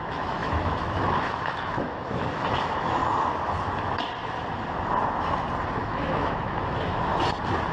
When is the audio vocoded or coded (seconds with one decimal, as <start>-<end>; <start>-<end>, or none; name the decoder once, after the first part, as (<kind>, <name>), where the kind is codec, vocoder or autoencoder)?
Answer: 0.0-3.0 (autoencoder, DAC-VAE); 5.7-7.1